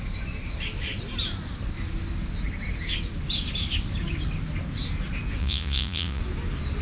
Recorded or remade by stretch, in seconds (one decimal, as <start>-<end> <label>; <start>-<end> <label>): 0.0-5.4 recorded; 5.4-6.2 remade; 6.2-6.8 recorded